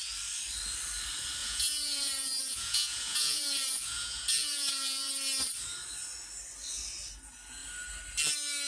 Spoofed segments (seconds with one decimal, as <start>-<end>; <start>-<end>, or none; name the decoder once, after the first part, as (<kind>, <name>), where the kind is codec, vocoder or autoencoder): 1.4-5.1 (vocoder, Vocos)